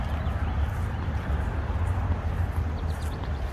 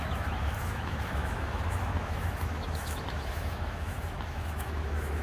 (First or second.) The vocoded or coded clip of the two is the second